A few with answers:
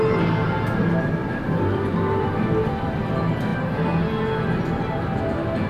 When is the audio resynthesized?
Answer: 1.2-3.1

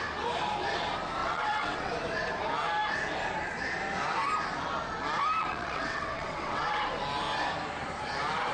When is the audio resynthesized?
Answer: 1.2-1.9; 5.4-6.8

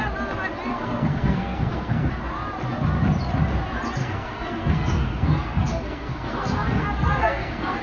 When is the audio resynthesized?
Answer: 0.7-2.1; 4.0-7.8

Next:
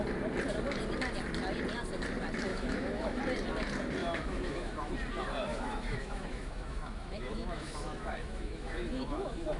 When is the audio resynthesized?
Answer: 2.5-3.2; 4.0-4.9; 5.5-9.6

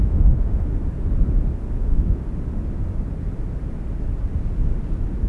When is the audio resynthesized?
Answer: 0.0-0.7; 1.8-2.2

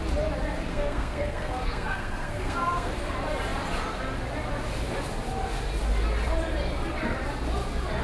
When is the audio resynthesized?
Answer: 0.7-2.9

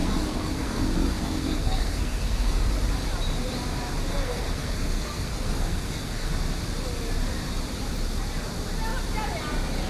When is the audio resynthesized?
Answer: 0.0-2.7; 4.1-6.3